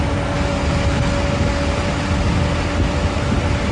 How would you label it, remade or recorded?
recorded